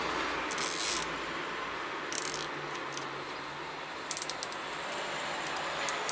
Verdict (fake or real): real